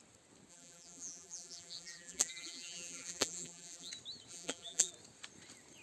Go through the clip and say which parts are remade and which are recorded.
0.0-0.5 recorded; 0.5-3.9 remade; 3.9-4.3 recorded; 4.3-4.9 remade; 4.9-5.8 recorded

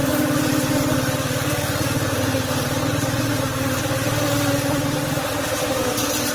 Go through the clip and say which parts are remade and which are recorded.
0.0-6.3 recorded

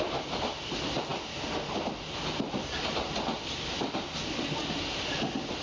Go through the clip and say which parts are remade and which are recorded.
0.0-5.6 recorded

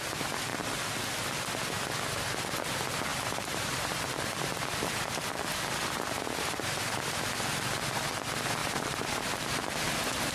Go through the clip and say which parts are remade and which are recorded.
0.0-3.1 recorded; 3.1-5.4 remade; 5.4-8.6 recorded; 8.6-9.7 remade; 9.7-10.3 recorded

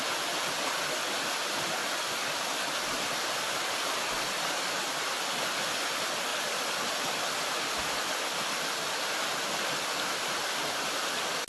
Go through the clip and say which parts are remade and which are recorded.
0.0-1.8 recorded; 1.8-4.1 remade; 4.1-6.3 recorded; 6.3-7.8 remade; 7.8-11.5 recorded

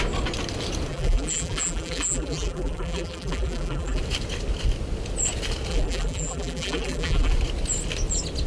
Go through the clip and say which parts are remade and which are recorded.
0.0-0.9 recorded; 0.9-4.0 remade; 4.0-5.7 recorded; 5.7-7.3 remade; 7.3-8.5 recorded